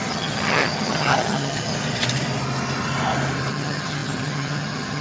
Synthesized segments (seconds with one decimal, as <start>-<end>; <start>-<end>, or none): 0.0-1.7; 3.5-5.0